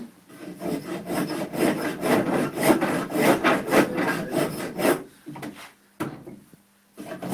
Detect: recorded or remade recorded